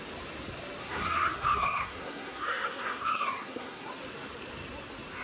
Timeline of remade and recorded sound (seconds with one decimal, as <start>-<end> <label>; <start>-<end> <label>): 0.0-0.8 recorded; 0.8-3.9 remade; 3.9-5.2 recorded